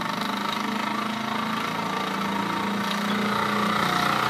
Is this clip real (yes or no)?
yes